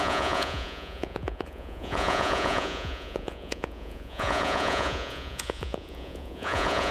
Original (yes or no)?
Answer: no